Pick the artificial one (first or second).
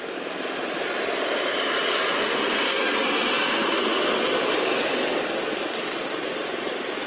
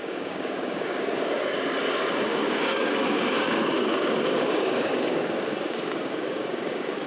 second